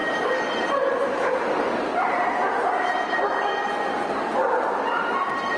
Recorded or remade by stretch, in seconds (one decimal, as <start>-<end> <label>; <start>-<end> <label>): 0.0-5.6 recorded